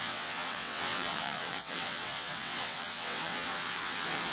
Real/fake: fake